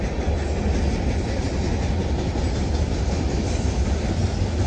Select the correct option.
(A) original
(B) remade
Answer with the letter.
A